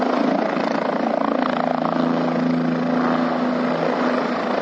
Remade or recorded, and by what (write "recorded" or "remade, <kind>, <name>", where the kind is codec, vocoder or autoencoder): recorded